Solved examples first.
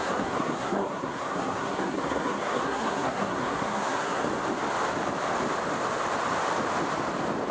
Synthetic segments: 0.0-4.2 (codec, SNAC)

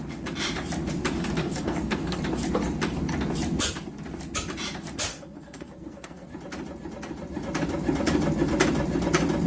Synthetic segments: 1.4-2.2 (codec, SNAC); 5.1-6.3